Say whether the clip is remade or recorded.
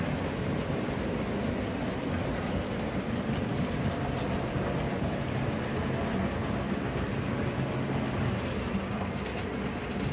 recorded